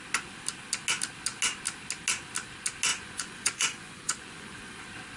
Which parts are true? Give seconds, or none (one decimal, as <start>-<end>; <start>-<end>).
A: 0.0-2.9; 4.8-5.2